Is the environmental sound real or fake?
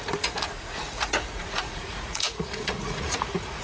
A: fake